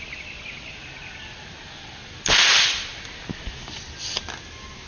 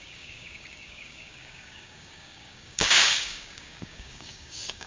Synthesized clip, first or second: second